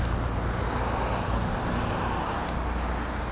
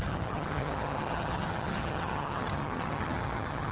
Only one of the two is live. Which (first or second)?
first